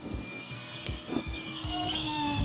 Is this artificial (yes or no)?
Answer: yes